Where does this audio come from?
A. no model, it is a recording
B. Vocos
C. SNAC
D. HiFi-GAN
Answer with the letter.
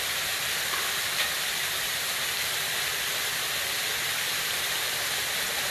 A